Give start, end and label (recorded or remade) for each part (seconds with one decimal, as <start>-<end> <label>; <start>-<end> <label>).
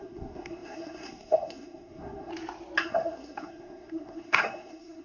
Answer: 0.0-2.3 remade; 2.3-2.8 recorded; 2.8-5.0 remade